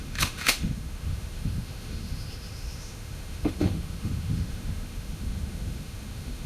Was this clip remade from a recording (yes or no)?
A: yes